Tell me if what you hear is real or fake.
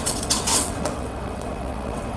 fake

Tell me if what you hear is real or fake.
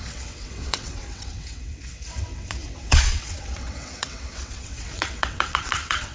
fake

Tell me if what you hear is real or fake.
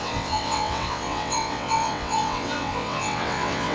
fake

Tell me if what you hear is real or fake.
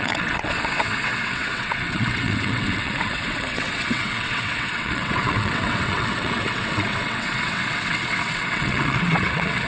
fake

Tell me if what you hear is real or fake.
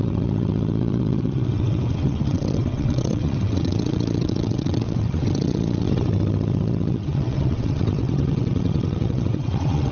fake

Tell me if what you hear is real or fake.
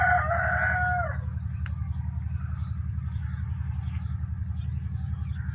real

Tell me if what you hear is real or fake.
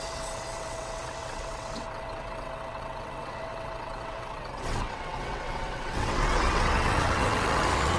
fake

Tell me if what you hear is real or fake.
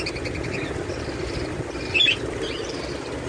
real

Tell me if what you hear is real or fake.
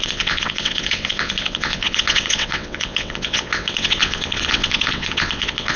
fake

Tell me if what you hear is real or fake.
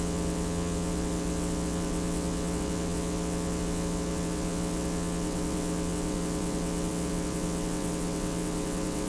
fake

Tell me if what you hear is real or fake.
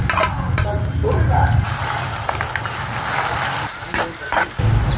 real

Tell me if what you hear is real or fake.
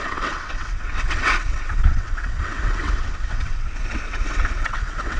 fake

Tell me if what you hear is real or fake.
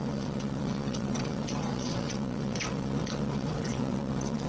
fake